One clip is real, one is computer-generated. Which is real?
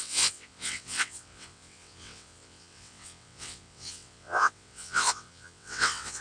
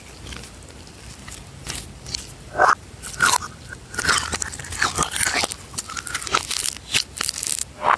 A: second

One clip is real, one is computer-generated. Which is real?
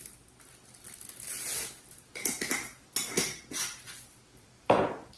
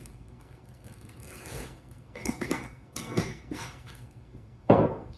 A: first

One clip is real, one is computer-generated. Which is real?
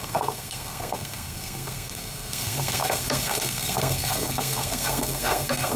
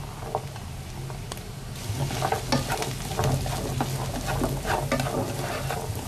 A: second